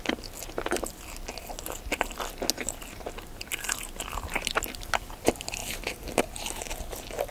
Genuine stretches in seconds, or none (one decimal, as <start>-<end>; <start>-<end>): 0.0-5.6; 6.2-7.3